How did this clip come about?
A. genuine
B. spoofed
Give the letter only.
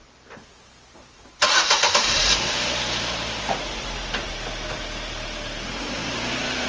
B